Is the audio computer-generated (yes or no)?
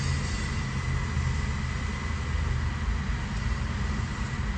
no